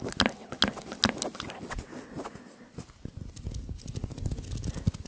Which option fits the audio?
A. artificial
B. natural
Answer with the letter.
B